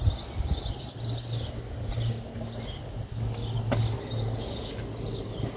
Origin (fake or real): real